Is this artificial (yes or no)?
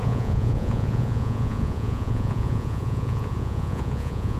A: yes